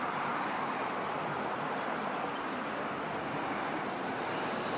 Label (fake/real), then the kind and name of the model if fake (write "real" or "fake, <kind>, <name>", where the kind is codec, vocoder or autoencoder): fake, vocoder, BigVGAN v2